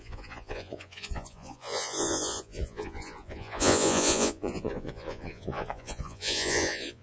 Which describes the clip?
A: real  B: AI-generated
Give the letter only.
B